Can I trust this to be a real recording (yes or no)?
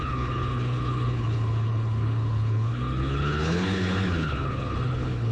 no